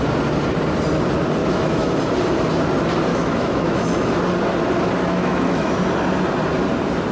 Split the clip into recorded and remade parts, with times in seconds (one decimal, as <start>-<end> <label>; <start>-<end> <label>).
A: 0.0-1.4 recorded; 1.4-2.0 remade; 2.0-3.1 recorded; 3.1-4.2 remade; 4.2-5.0 recorded; 5.0-5.8 remade; 5.8-7.1 recorded